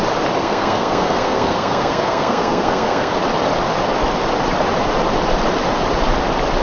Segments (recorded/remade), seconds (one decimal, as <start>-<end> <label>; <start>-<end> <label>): 0.0-0.4 recorded; 0.4-3.1 remade; 3.1-6.6 recorded